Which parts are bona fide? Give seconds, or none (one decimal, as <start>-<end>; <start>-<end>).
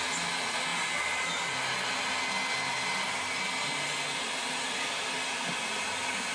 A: 0.0-6.3